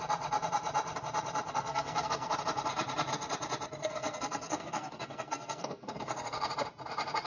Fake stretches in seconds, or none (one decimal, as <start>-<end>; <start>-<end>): 1.5-2.3; 3.8-6.5